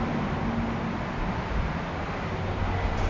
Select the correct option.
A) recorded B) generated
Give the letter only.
A